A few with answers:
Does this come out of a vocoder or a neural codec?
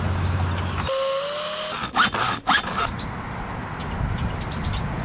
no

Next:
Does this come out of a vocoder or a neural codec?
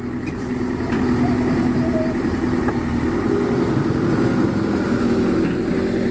no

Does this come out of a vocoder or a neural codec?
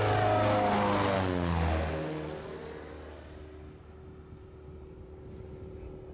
no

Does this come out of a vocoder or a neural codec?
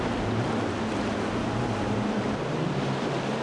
no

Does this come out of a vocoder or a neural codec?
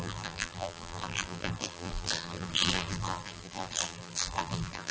yes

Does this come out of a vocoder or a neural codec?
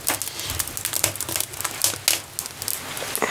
no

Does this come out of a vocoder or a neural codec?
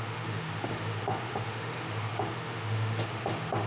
yes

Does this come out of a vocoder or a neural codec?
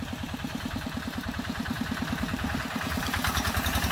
yes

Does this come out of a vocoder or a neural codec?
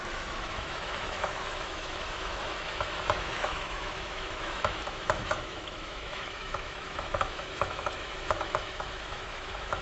yes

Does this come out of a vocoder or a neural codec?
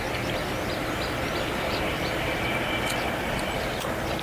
no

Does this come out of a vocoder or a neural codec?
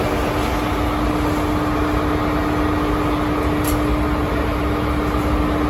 no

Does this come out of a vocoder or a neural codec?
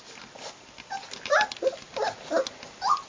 no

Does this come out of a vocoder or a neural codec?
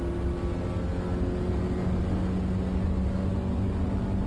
no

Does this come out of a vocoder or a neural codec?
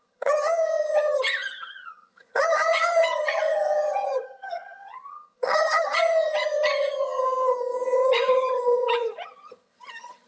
yes